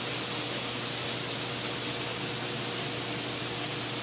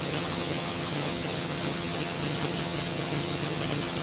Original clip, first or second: first